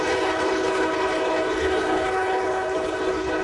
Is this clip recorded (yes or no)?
no